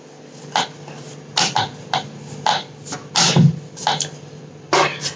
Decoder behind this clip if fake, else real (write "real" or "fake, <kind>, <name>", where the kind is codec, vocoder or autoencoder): real